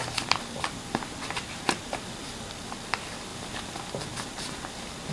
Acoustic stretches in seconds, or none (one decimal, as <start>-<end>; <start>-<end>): none